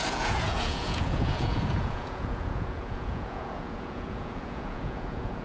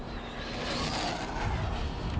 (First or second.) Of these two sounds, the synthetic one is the first